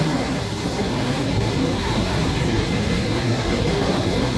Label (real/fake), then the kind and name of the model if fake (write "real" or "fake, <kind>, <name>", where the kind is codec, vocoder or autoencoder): fake, codec, SNAC